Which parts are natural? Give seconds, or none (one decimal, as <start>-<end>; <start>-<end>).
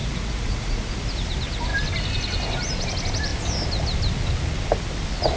0.9-5.4